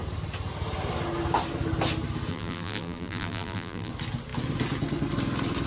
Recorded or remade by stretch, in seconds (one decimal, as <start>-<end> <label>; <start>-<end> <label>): 0.0-2.3 recorded; 2.3-3.9 remade; 3.9-5.7 recorded